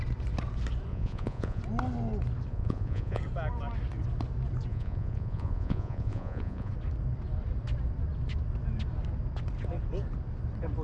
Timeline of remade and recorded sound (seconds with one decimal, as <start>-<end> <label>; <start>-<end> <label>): 0.0-0.9 recorded; 0.9-1.6 remade; 1.6-2.5 recorded; 2.5-3.2 remade; 3.2-4.7 recorded; 4.7-6.7 remade; 6.7-10.8 recorded